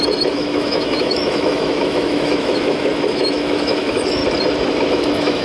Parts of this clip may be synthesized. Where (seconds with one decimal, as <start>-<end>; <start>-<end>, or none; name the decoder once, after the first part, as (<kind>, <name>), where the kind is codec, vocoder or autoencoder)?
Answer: 0.0-4.2 (autoencoder, DAC-VAE); 4.9-5.4